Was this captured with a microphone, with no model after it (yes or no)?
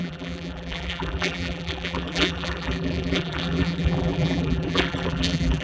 no